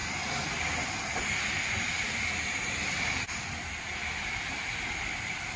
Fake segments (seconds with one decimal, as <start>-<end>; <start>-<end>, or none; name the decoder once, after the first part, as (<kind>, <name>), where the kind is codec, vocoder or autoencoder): 3.4-5.6 (vocoder, BigVGAN v2)